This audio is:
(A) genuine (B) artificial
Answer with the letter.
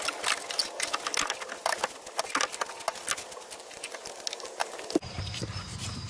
A